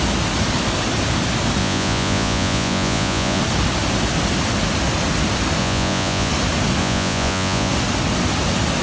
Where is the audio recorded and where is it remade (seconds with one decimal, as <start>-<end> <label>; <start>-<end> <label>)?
0.0-1.6 recorded; 1.6-3.4 remade; 3.4-5.6 recorded; 5.6-6.3 remade; 6.3-6.8 recorded; 6.8-7.7 remade; 7.7-8.8 recorded